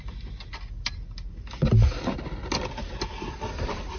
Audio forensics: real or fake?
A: real